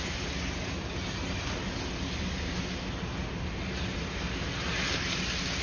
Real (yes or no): yes